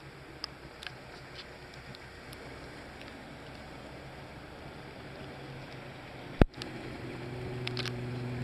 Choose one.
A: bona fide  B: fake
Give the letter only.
A